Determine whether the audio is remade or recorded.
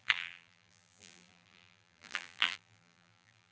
remade